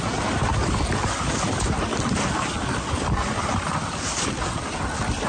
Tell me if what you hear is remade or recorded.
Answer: recorded